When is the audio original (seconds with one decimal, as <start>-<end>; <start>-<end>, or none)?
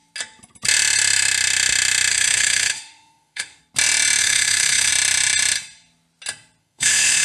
0.0-2.1; 3.6-4.2; 4.9-6.6